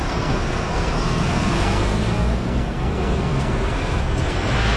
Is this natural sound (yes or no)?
no